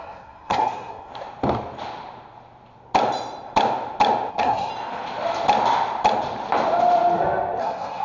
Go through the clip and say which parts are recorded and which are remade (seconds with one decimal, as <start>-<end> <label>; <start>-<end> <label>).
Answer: 0.0-1.1 remade; 1.1-4.3 recorded; 4.3-4.7 remade; 4.7-7.6 recorded; 7.6-8.0 remade